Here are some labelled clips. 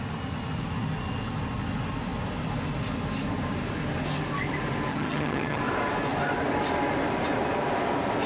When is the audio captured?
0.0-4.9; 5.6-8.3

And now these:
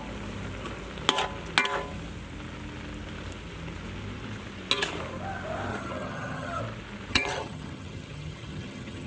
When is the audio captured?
0.0-5.7; 6.6-7.1

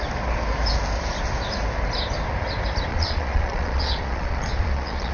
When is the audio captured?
0.0-2.9

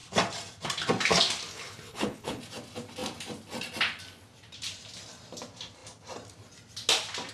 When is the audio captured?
0.0-1.5; 2.4-7.3